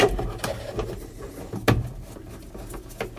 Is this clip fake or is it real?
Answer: real